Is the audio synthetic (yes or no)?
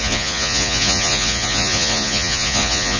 yes